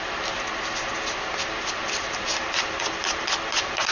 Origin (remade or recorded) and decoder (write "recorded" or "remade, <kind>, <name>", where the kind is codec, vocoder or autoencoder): recorded